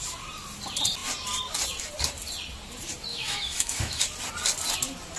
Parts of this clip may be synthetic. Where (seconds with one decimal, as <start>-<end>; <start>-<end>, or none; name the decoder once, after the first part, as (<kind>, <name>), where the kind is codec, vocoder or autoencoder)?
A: 3.1-4.0 (autoencoder, DAC-VAE)

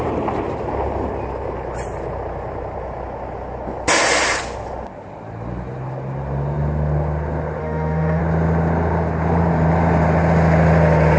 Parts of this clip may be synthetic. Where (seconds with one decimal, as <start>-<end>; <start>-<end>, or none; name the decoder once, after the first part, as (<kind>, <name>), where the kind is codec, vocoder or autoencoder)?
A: 7.6-8.2 (autoencoder, DAC-VAE)

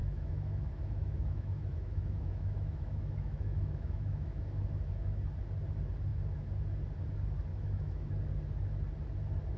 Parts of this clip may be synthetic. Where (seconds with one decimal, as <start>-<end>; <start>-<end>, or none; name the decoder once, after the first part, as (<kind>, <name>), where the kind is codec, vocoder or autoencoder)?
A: 0.0-5.2 (autoencoder, DAC-VAE); 7.5-8.1

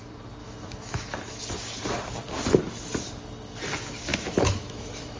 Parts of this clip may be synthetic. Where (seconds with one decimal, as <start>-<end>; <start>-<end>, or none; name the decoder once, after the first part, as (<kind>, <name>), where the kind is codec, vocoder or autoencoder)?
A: 0.4-1.4 (autoencoder, DAC-VAE); 4.1-5.2

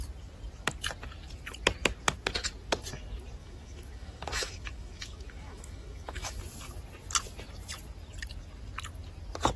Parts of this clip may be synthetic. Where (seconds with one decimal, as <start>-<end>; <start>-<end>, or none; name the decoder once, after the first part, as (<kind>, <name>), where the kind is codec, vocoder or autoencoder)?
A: 3.4-6.4 (autoencoder, DAC-VAE)

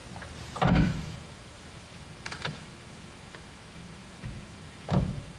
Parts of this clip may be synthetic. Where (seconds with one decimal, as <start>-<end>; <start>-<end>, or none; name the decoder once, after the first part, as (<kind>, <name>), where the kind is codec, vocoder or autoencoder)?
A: 0.7-5.4 (autoencoder, DAC-VAE)

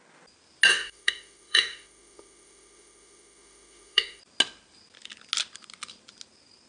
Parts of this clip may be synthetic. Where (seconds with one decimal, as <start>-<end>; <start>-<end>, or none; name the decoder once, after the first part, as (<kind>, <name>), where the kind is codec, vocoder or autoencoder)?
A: 0.7-4.2 (autoencoder, DAC-VAE)

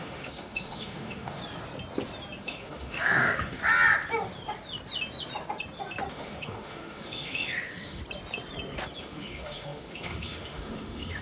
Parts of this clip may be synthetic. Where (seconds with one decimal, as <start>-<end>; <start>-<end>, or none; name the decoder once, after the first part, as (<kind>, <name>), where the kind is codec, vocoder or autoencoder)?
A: 0.0-1.4 (autoencoder, DAC-VAE); 2.4-3.6; 6.1-8.0; 9.0-11.2